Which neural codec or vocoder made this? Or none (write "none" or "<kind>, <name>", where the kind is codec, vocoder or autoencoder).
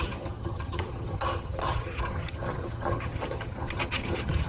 vocoder, HiFi-GAN